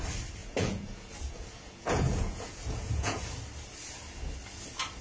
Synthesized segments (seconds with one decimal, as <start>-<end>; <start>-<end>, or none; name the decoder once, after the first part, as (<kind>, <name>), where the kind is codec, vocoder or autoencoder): 0.4-3.2 (vocoder, Vocos)